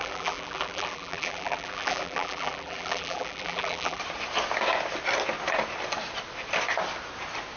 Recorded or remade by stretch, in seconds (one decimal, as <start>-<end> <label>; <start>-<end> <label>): 0.0-4.0 remade; 4.0-7.6 recorded